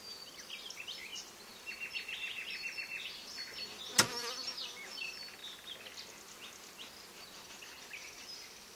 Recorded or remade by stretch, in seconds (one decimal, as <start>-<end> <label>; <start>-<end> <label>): 0.0-8.8 recorded